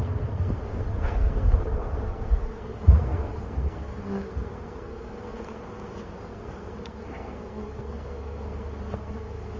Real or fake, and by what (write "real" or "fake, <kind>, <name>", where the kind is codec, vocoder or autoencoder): fake, codec, SNAC